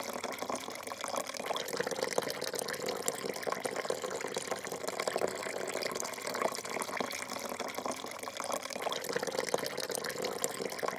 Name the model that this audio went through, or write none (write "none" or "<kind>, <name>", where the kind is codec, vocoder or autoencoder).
none